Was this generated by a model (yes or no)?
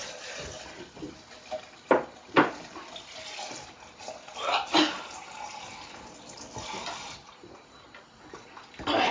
no